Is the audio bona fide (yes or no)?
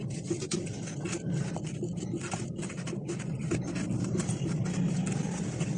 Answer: no